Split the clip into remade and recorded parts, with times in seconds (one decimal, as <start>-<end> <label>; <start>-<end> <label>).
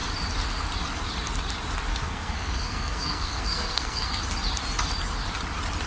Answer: 0.0-1.9 recorded; 1.9-4.2 remade; 4.2-5.9 recorded